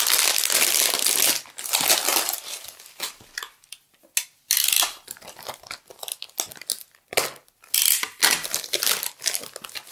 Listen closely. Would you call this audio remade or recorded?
recorded